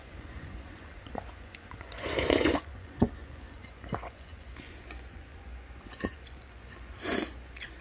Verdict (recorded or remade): remade